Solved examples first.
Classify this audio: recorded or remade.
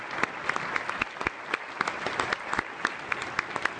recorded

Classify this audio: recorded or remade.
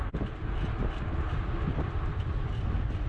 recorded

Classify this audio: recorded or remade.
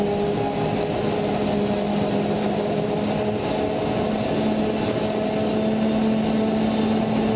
recorded